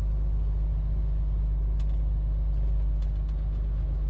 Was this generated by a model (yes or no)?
no